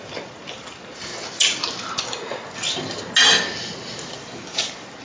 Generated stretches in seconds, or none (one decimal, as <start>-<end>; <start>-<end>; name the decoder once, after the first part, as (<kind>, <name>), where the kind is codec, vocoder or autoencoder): 0.0-1.1 (vocoder, BigVGAN v2); 4.1-5.0